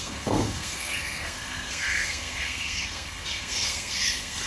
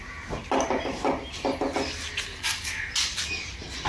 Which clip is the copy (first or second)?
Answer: first